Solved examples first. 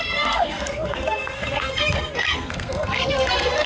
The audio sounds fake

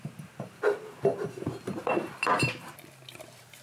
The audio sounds real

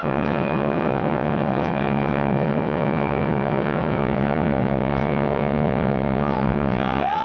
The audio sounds fake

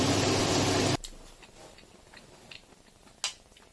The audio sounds real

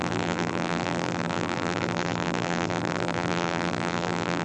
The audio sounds fake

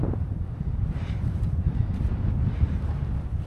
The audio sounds real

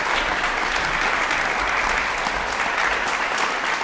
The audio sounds real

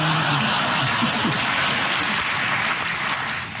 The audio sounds real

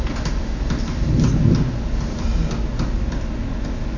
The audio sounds real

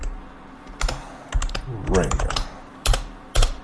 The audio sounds real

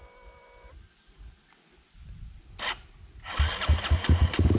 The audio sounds real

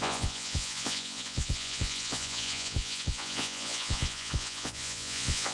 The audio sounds fake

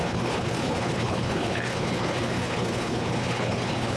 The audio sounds fake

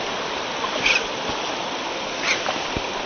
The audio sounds real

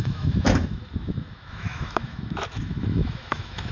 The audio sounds fake